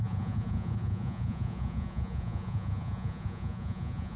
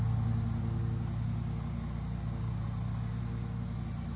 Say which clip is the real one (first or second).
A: second